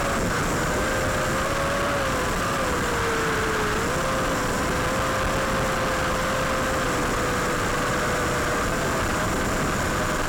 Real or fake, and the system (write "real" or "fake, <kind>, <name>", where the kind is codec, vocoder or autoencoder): real